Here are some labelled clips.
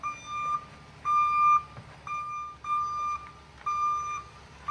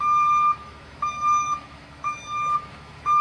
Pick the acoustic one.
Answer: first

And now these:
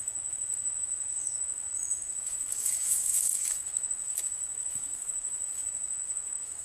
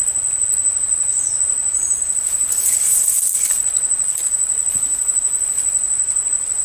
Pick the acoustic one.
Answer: second